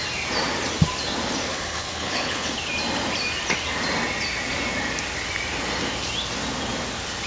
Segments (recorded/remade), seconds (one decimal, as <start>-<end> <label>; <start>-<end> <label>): 0.0-1.5 recorded; 1.5-2.5 remade; 2.5-7.3 recorded